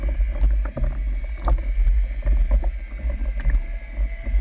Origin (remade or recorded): recorded